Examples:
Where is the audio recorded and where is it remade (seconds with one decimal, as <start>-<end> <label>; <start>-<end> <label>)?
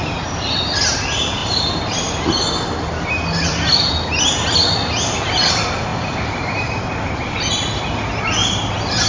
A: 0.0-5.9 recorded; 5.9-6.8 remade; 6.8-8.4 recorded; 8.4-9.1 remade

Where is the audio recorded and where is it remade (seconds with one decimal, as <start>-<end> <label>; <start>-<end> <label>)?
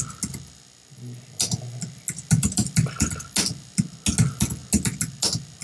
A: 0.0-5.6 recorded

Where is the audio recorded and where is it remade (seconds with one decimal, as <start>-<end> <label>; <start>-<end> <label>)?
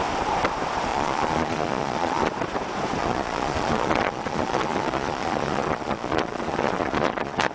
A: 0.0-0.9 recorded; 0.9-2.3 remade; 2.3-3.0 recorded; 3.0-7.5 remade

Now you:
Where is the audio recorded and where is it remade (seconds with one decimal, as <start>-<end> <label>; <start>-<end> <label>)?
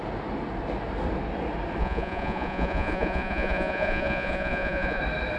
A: 0.0-1.8 recorded; 1.8-5.0 remade; 5.0-5.4 recorded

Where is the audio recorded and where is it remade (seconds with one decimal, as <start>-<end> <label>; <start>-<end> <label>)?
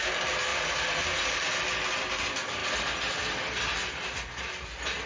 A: 0.0-5.1 recorded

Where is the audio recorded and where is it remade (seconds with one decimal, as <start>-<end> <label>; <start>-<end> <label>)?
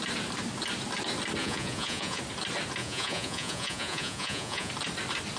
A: 0.0-1.4 recorded; 1.4-2.2 remade; 2.2-2.8 recorded; 2.8-4.7 remade; 4.7-5.4 recorded